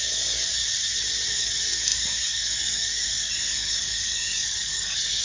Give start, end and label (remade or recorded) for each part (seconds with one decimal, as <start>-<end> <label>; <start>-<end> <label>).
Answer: 0.0-0.6 remade; 0.6-1.3 recorded; 1.3-5.2 remade